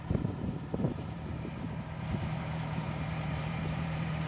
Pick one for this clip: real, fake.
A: fake